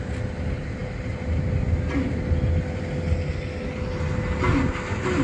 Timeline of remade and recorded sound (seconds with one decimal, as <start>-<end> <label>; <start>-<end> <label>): 0.0-5.2 recorded